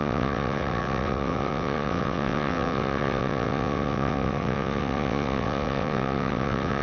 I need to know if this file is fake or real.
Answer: fake